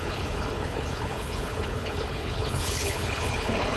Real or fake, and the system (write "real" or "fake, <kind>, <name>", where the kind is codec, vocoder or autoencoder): fake, codec, HILCodec